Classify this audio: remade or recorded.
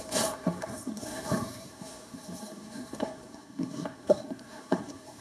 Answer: remade